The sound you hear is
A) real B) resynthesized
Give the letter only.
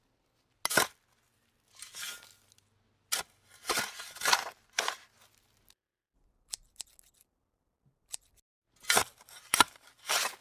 A